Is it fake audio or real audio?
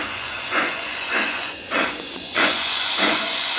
fake